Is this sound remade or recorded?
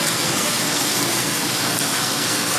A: remade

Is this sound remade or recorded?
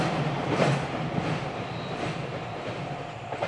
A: recorded